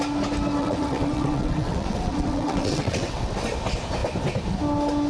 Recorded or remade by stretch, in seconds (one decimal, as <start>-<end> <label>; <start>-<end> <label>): 0.0-0.6 recorded; 0.6-3.3 remade; 3.3-5.1 recorded